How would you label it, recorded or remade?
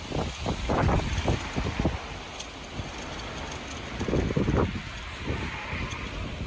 recorded